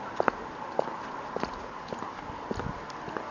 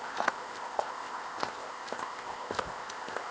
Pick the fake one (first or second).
second